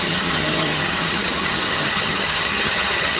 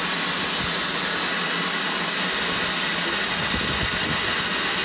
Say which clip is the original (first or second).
second